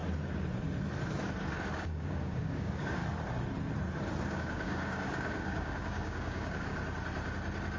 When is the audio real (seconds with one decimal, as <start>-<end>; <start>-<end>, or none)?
0.0-1.8; 3.0-4.2; 6.7-7.8